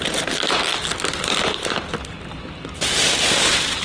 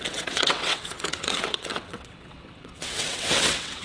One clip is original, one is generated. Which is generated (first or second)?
second